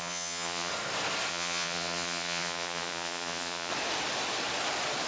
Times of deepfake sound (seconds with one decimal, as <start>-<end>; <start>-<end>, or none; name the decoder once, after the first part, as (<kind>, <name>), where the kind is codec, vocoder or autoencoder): 0.0-0.7 (vocoder, Vocos); 1.3-3.7